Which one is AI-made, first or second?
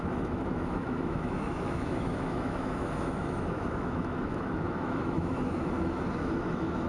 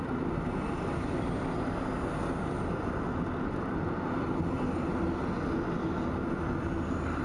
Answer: first